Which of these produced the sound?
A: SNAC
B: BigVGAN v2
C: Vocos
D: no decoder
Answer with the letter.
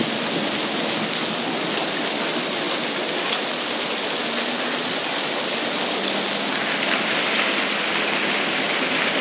D